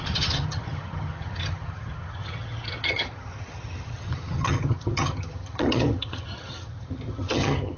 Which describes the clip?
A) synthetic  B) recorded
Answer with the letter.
A